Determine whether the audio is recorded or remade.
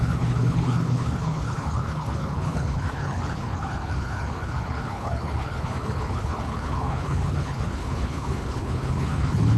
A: remade